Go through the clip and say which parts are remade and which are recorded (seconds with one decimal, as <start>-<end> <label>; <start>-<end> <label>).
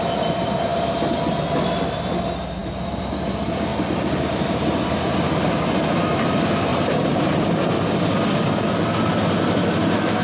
0.0-2.6 recorded; 2.6-3.1 remade; 3.1-3.7 recorded; 3.7-5.0 remade; 5.0-6.7 recorded; 6.7-7.6 remade; 7.6-10.2 recorded